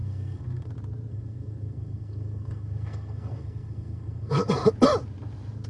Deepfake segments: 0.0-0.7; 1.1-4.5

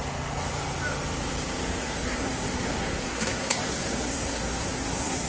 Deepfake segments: 1.8-5.3